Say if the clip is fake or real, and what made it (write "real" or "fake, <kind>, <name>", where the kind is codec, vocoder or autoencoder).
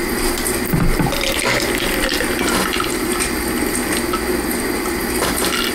real